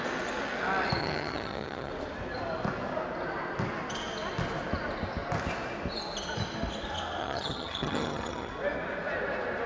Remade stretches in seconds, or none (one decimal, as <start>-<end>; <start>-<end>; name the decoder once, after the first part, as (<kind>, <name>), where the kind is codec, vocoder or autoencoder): 1.0-1.9 (vocoder, HiFi-GAN); 7.2-8.5